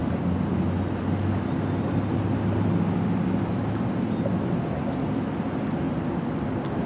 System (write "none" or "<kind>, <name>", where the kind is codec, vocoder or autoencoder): none